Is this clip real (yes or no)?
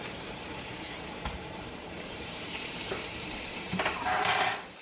no